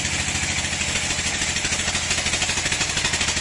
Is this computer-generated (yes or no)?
no